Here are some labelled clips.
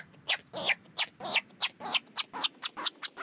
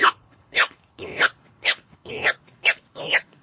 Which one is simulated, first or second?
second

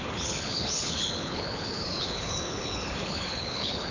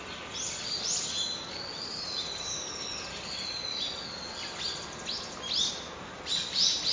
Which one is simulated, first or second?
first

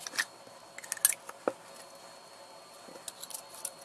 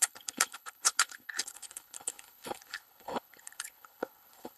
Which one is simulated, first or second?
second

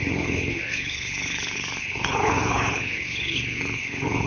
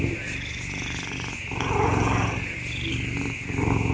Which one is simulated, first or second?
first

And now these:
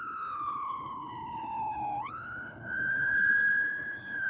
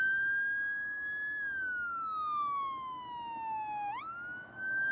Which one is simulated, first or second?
first